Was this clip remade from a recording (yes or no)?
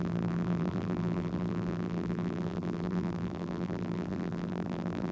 yes